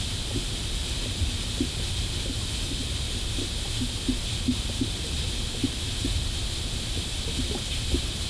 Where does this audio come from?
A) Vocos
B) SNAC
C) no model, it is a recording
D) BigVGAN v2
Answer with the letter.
C